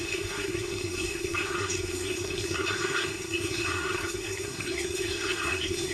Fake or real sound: fake